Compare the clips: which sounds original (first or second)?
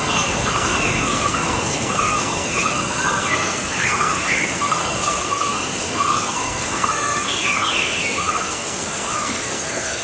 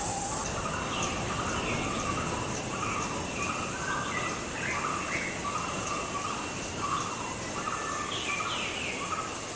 second